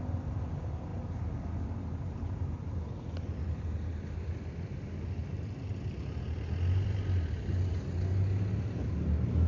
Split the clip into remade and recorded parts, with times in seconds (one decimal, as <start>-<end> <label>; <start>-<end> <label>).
0.0-5.2 recorded; 5.2-7.7 remade; 7.7-9.5 recorded